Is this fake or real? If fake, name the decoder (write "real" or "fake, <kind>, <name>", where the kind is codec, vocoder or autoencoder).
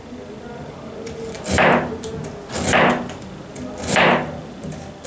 real